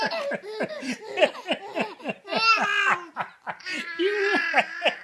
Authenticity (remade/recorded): recorded